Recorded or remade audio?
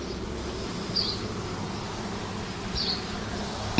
recorded